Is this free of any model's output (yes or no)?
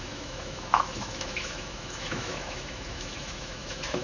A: no